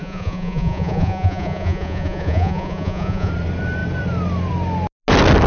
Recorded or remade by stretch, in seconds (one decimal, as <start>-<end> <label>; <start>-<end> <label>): 0.0-3.3 remade; 3.3-5.5 recorded